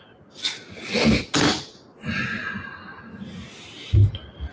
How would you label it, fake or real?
real